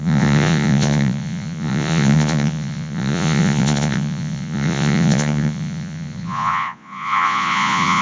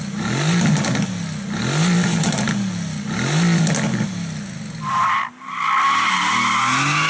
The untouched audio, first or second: second